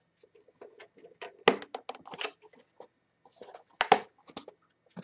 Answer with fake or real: real